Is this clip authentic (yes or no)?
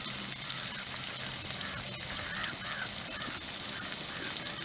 yes